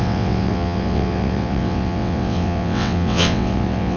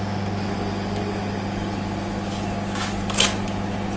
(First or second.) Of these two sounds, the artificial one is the first